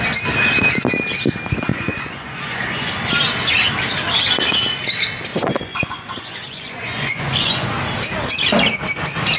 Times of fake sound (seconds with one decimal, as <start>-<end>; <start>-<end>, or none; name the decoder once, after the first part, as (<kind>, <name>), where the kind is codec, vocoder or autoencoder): 1.7-2.9 (vocoder, Vocos); 5.3-7.7